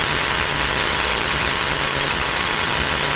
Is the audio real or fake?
fake